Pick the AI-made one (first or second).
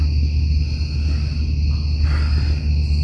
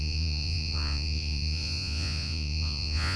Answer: second